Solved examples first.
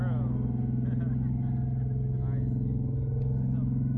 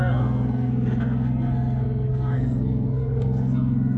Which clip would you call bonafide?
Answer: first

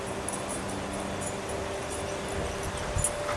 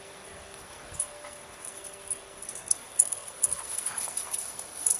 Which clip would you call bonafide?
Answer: first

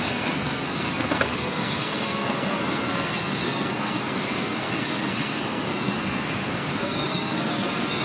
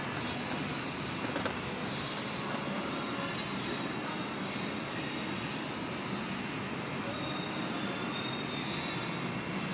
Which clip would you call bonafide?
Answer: second